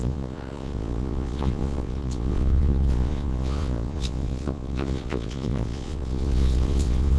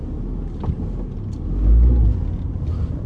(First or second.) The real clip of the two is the second